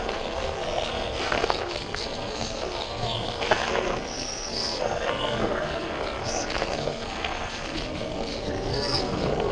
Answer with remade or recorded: remade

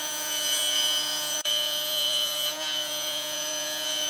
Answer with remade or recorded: remade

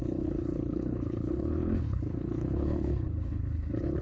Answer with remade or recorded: remade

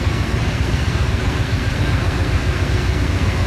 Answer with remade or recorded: remade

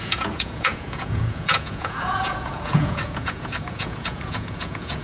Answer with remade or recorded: remade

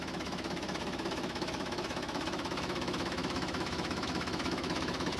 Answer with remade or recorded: remade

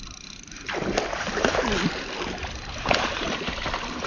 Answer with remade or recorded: recorded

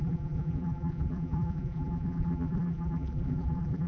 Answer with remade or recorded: remade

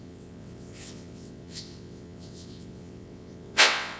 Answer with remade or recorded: remade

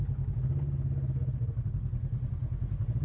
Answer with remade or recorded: recorded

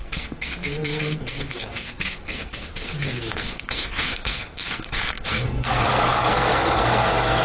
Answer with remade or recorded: remade